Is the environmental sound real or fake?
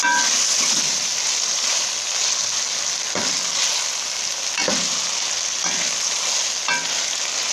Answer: real